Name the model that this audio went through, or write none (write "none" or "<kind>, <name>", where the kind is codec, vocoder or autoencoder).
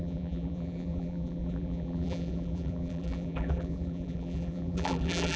vocoder, BigVGAN v2